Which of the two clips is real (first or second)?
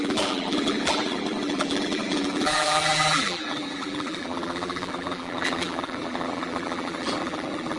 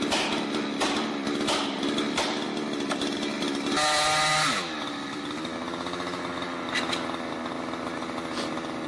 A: second